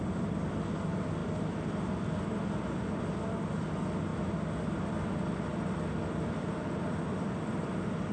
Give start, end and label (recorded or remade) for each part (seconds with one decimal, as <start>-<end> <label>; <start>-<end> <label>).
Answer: 0.0-8.1 recorded